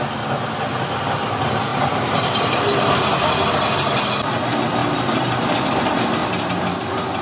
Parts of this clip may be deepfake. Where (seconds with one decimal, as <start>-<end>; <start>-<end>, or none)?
1.7-2.8